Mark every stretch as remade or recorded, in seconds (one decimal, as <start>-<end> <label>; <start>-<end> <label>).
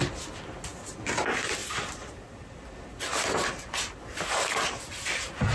0.0-5.5 recorded